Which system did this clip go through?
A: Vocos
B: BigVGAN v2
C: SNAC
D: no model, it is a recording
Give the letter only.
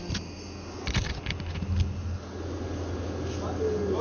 D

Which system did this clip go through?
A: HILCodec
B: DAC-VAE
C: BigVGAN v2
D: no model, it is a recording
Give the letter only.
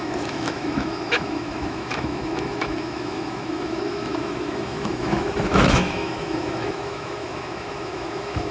B